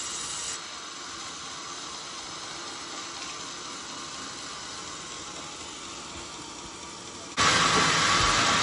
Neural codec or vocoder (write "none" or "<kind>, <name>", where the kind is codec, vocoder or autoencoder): none